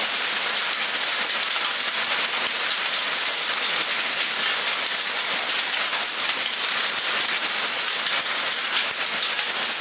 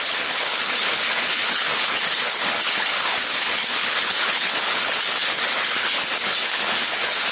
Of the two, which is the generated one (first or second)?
second